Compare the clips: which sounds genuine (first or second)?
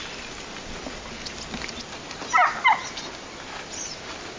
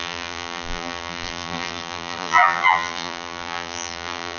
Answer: first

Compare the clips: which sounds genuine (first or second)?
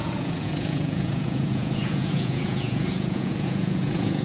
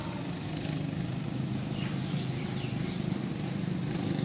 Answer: second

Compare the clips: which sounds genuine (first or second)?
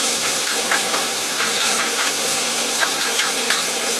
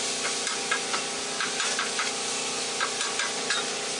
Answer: second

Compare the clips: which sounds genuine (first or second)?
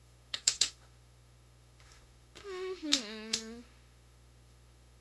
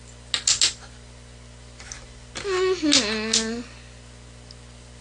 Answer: second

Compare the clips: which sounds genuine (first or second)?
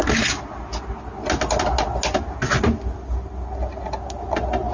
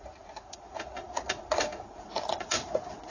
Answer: first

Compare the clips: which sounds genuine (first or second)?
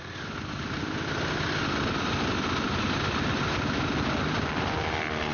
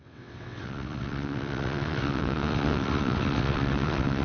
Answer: first